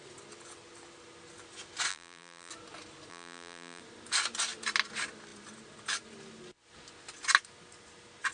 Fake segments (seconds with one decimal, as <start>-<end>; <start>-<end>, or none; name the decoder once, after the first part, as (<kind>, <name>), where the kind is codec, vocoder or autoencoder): 1.9-2.5 (vocoder, BigVGAN v2); 3.1-3.8